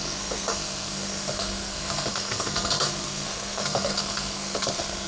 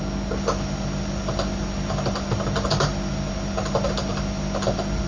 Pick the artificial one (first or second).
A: first